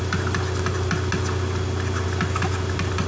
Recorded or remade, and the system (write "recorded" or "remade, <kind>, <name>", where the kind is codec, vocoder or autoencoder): recorded